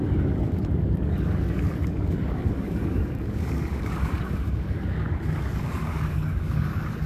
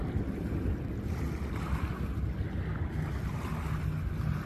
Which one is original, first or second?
second